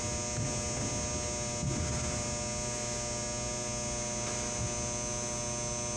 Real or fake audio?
real